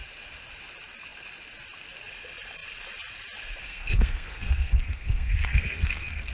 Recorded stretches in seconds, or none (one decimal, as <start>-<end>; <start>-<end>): 0.0-3.6